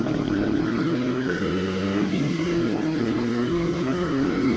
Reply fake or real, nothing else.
fake